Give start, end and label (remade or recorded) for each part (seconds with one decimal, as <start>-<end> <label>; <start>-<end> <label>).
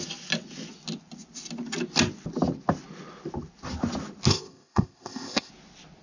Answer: 0.0-4.3 recorded; 4.3-5.5 remade; 5.5-6.0 recorded